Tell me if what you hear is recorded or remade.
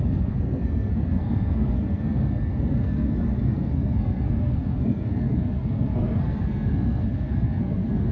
remade